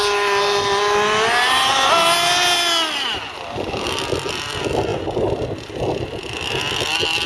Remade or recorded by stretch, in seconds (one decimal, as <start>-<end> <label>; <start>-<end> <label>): 0.0-7.3 recorded

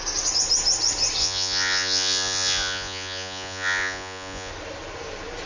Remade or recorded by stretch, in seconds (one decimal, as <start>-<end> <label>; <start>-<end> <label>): 0.0-1.2 recorded; 1.2-4.5 remade; 4.5-5.5 recorded

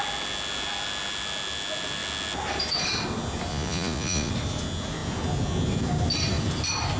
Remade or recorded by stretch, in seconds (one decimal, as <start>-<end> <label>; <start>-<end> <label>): 0.0-3.5 recorded; 3.5-4.3 remade; 4.3-7.0 recorded

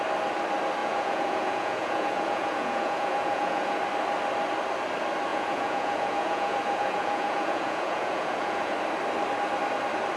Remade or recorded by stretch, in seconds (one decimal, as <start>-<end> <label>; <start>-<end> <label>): 0.0-0.8 recorded; 0.8-3.8 remade; 3.8-5.3 recorded; 5.3-8.7 remade; 8.7-10.2 recorded